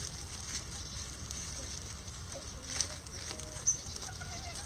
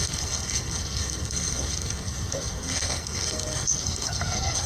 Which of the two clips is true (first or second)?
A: first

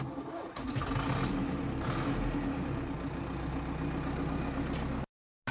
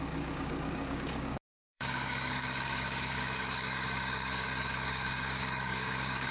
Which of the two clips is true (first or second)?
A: first